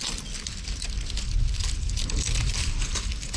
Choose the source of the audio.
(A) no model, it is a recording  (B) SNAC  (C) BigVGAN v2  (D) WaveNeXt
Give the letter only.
A